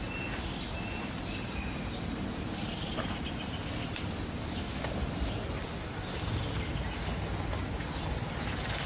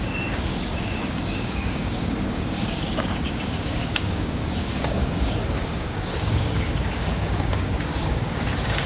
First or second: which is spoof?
second